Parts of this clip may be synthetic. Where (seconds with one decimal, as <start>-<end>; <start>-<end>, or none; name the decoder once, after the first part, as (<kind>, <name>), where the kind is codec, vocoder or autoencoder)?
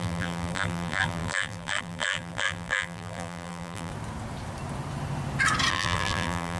0.0-3.9 (vocoder, BigVGAN v2); 5.7-6.6